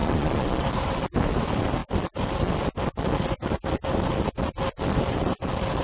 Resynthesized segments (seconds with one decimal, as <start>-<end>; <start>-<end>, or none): 0.0-0.6